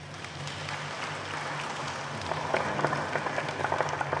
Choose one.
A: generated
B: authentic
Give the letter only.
B